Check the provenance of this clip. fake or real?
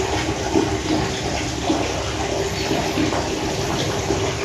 real